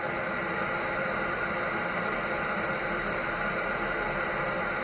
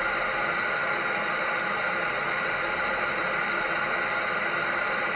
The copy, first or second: second